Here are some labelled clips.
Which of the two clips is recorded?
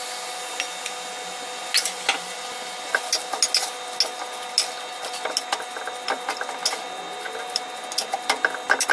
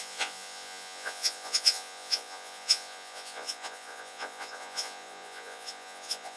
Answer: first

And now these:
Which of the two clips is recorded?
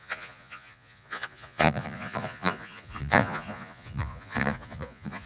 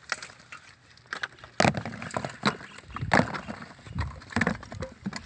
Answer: second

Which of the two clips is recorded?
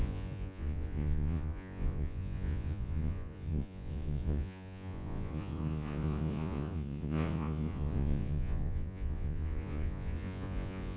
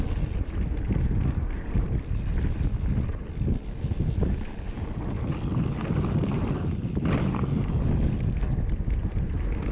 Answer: second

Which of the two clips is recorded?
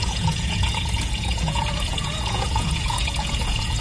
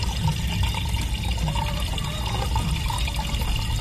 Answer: second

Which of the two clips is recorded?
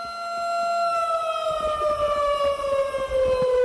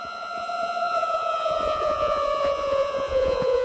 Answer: first